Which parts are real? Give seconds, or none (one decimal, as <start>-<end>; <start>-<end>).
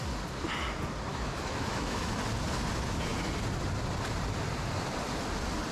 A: 0.0-1.1; 2.2-5.7